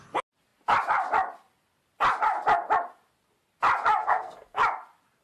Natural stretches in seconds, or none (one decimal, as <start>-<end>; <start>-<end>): 0.0-4.0; 4.6-5.2